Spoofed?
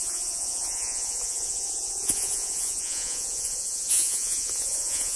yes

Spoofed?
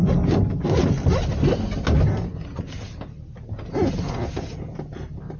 no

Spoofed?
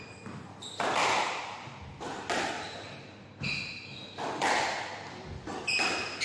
no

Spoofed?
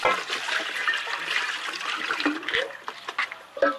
no